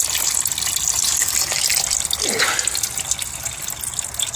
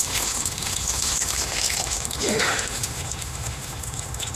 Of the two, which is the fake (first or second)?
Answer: second